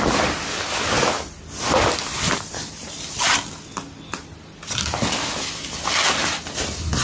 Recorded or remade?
recorded